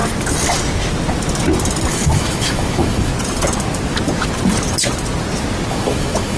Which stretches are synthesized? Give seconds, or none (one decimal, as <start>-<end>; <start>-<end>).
1.9-3.1; 5.7-6.4